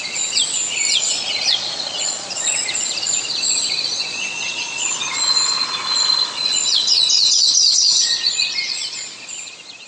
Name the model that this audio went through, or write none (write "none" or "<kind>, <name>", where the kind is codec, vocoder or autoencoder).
vocoder, Vocos